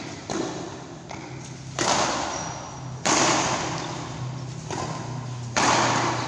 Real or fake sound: real